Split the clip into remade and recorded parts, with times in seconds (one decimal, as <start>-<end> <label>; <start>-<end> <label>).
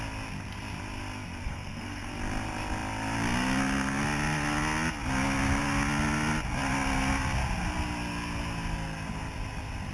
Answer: 0.0-1.4 recorded; 1.4-2.1 remade; 2.1-9.9 recorded